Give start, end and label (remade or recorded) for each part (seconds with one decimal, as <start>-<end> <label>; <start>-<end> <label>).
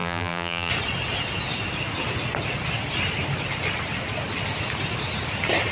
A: 0.0-0.7 remade; 0.7-5.7 recorded